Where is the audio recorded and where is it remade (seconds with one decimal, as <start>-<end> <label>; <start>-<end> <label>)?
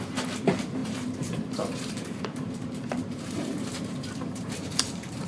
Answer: 0.0-5.3 remade